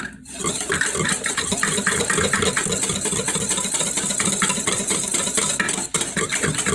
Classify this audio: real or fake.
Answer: real